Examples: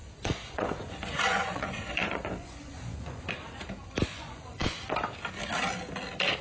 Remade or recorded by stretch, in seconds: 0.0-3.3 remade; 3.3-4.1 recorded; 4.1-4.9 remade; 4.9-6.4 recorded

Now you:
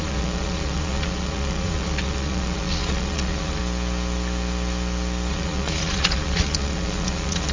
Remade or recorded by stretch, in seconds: 0.0-3.6 remade; 3.6-5.3 recorded; 5.3-7.5 remade

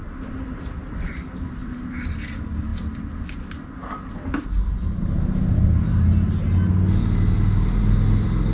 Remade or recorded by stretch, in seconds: 0.0-8.5 recorded

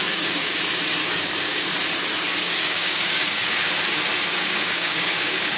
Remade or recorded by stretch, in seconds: 0.0-0.6 remade; 0.6-1.0 recorded; 1.0-1.7 remade; 1.7-2.4 recorded; 2.4-3.7 remade; 3.7-4.3 recorded; 4.3-5.6 remade